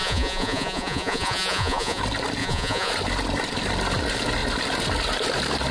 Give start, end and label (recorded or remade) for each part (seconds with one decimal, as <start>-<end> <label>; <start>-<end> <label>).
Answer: 0.0-2.0 remade; 2.0-2.4 recorded; 2.4-2.9 remade; 2.9-5.7 recorded